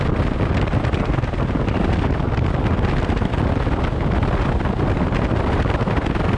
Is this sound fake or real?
real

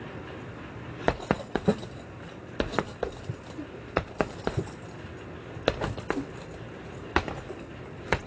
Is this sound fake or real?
fake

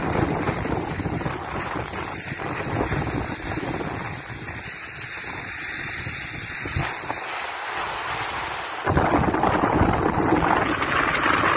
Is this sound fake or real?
real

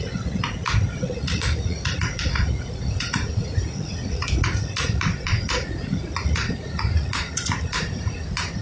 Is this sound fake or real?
fake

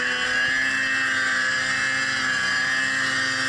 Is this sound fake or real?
real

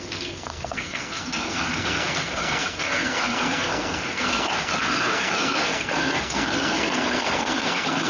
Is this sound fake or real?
fake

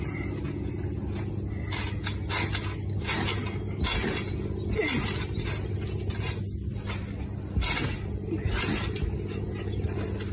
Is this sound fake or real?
real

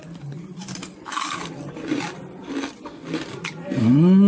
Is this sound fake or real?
real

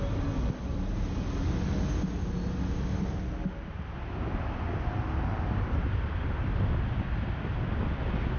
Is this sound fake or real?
real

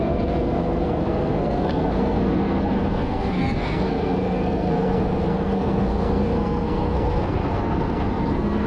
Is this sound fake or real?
fake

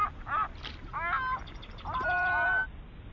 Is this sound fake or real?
real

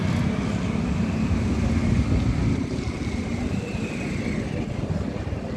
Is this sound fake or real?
real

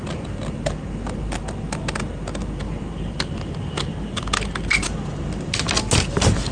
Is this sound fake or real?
real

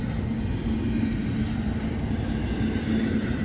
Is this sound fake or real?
real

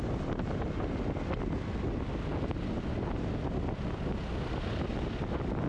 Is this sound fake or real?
real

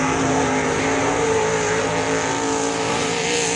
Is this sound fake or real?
real